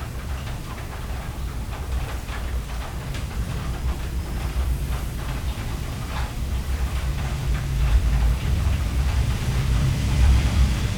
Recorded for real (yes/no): no